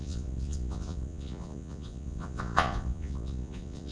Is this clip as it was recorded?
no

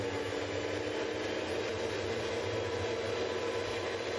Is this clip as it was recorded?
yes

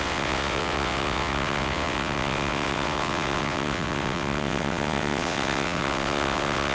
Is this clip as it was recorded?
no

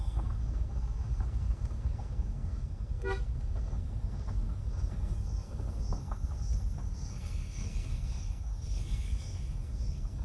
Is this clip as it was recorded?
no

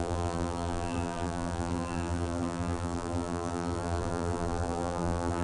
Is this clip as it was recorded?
no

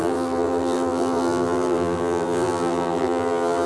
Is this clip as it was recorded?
no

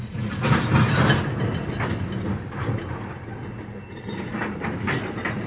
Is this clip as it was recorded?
yes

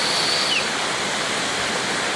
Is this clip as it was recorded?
yes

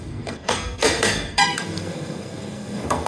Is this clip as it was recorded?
no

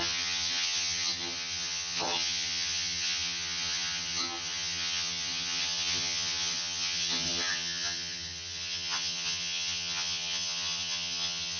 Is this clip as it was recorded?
no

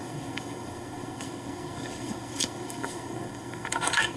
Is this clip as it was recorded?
no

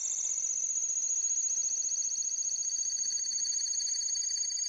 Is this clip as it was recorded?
yes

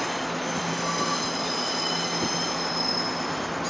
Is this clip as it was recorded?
yes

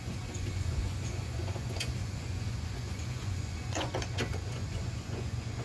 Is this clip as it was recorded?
no